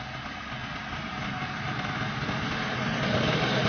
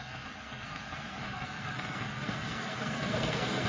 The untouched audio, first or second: first